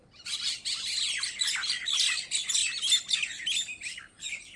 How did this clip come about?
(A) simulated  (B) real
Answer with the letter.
B